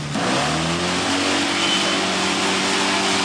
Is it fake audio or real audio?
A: real